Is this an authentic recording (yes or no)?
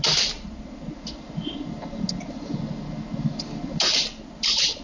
yes